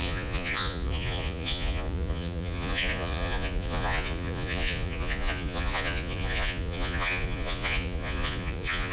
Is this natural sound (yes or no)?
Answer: no